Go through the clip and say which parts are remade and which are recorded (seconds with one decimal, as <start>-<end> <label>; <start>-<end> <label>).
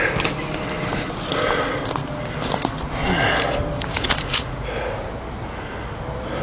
0.0-3.9 recorded; 3.9-5.1 remade; 5.1-6.4 recorded